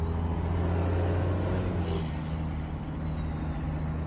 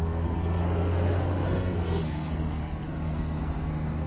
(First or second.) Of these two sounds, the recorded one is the first